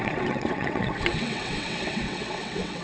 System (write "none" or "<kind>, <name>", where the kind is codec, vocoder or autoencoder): vocoder, WaveNeXt